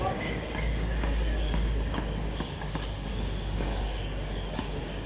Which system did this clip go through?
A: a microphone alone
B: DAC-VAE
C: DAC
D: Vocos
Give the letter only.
C